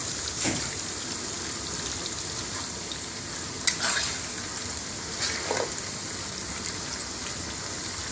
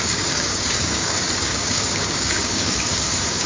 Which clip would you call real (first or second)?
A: first